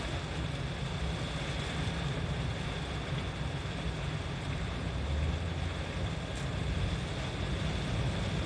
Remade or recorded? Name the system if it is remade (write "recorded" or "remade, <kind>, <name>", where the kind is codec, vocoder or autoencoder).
recorded